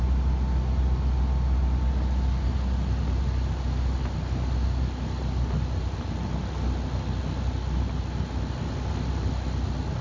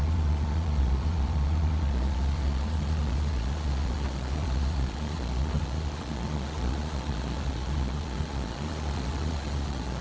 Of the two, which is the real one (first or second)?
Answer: first